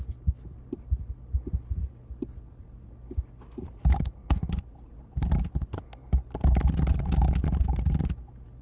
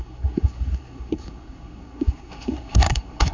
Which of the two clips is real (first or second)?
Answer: first